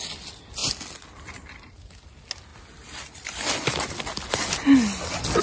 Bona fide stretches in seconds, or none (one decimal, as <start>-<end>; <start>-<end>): 0.0-5.4